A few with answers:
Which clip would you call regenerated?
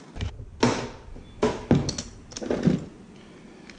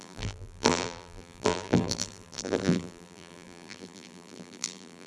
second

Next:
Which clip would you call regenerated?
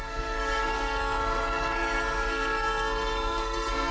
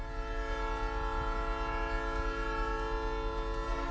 first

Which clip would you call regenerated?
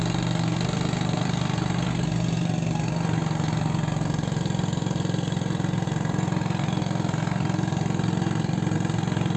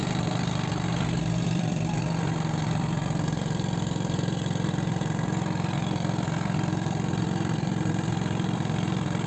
second